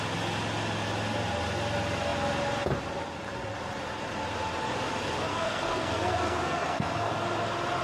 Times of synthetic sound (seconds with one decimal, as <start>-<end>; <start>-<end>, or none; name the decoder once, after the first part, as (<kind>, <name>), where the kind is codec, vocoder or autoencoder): 5.3-7.1 (codec, SNAC)